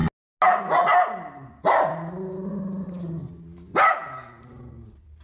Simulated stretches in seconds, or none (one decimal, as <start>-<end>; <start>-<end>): none